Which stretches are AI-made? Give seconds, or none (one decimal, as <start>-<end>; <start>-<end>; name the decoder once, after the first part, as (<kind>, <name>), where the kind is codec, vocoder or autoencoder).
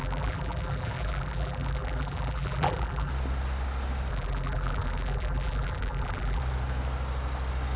0.0-3.1 (vocoder, BigVGAN v2); 4.1-6.4